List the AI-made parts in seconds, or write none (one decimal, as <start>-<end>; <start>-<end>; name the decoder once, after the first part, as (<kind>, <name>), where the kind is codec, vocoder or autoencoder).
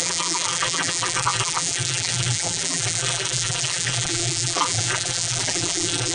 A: 0.0-6.1 (vocoder, BigVGAN v2)